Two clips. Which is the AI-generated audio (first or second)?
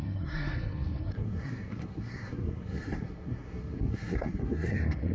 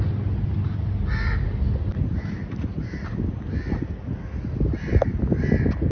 first